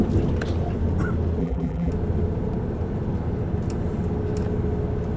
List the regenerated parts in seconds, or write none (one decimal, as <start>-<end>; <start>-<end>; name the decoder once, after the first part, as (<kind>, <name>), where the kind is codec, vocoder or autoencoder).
1.4-1.9 (vocoder, BigVGAN v2)